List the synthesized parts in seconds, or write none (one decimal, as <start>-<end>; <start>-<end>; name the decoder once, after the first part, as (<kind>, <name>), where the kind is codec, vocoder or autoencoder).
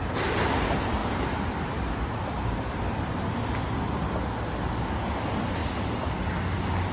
1.0-2.8 (vocoder, BigVGAN v2)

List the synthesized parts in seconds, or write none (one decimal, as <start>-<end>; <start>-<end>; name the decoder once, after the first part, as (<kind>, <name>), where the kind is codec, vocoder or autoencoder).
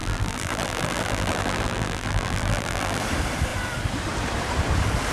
0.0-3.0 (vocoder, BigVGAN v2)